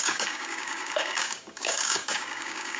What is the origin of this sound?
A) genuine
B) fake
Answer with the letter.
B